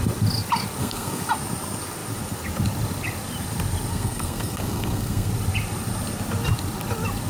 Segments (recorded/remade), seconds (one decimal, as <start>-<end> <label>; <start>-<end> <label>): 0.0-0.8 recorded; 0.8-1.3 remade; 1.3-3.9 recorded; 3.9-5.3 remade; 5.3-7.3 recorded